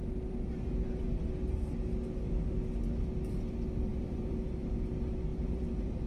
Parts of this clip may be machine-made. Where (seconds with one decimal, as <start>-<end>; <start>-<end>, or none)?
0.0-1.3; 3.9-4.4; 5.3-6.1